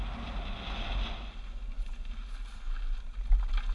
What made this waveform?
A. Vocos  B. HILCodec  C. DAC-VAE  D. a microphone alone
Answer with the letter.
D